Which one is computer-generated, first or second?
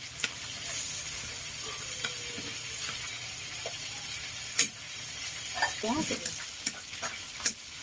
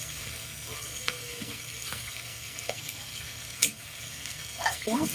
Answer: second